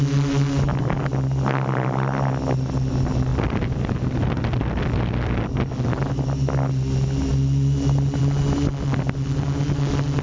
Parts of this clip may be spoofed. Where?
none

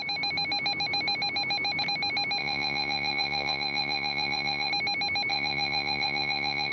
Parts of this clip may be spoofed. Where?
2.4-4.7 (vocoder, Vocos); 5.3-6.7

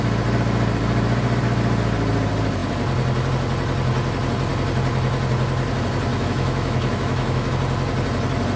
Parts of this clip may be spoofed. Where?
6.1-7.5 (autoencoder, DAC-VAE)

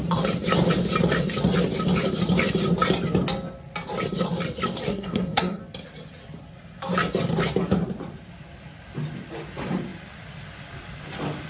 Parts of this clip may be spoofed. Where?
4.9-5.6 (codec, SNAC)